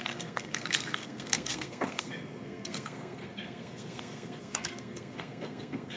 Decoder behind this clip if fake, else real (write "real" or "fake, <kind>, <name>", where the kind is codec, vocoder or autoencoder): fake, codec, SNAC